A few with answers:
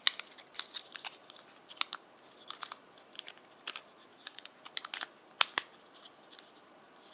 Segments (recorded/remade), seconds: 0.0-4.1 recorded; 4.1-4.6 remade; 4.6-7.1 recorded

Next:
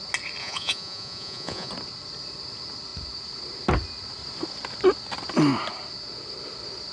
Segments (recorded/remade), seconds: 0.0-0.4 recorded; 0.4-1.7 remade; 1.7-6.9 recorded

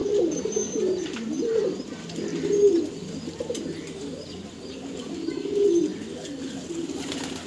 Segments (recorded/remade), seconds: 0.0-7.5 remade

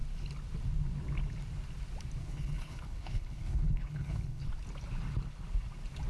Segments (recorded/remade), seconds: 0.0-2.2 recorded; 2.2-4.5 remade; 4.5-6.1 recorded

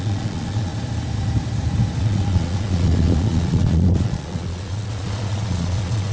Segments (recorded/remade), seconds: 0.0-0.7 remade; 0.7-2.0 recorded; 2.0-6.1 remade

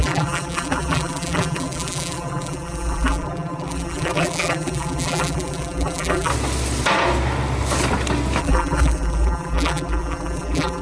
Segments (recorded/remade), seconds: 0.0-6.3 remade; 6.3-8.4 recorded; 8.4-10.8 remade